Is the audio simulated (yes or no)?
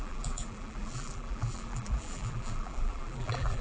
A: yes